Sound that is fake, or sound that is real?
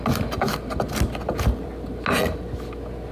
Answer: real